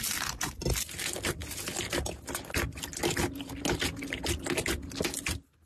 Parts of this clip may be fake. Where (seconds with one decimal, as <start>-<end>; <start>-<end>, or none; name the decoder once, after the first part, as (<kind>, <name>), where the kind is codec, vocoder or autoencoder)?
none